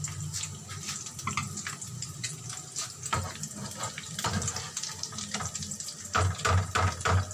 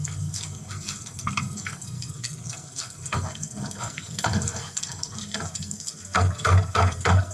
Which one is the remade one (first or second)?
second